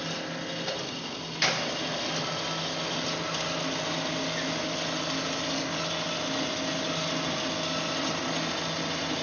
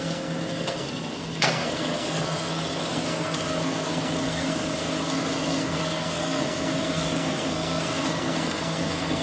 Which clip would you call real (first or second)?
first